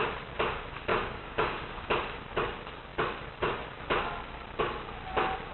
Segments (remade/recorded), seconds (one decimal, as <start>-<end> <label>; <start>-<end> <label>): 0.0-0.9 recorded; 0.9-1.9 remade; 1.9-5.5 recorded